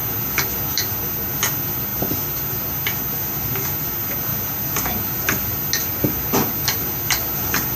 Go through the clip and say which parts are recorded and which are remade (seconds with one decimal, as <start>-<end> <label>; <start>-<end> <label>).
0.0-7.8 recorded